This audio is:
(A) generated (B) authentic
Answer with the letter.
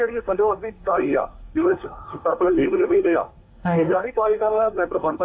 A